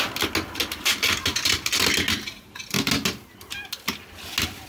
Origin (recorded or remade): recorded